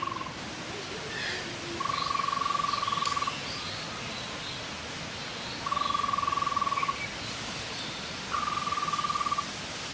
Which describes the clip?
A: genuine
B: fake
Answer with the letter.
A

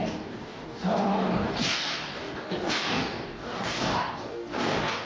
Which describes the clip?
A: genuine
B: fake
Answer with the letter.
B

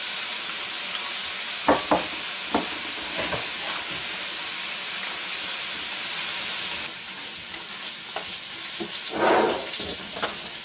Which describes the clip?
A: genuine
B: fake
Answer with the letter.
A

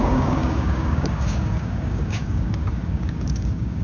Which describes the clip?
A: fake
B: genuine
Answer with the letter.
A